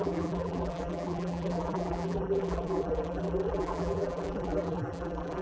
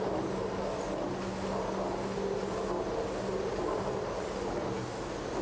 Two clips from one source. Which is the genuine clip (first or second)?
second